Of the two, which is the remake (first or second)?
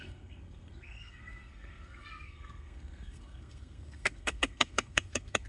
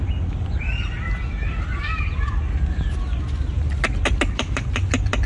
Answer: first